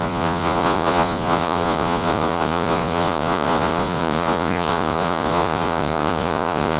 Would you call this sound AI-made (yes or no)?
yes